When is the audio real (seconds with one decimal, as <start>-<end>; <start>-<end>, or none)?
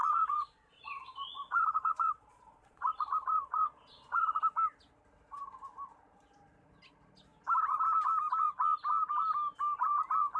4.4-10.4